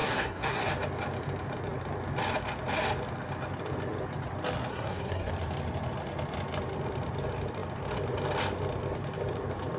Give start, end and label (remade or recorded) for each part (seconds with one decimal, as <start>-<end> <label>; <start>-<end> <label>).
0.0-0.7 remade; 0.7-4.7 recorded; 4.7-5.3 remade; 5.3-9.8 recorded